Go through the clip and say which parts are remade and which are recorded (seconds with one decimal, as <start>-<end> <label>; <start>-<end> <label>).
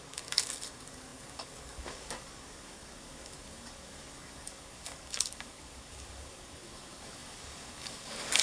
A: 0.0-8.4 remade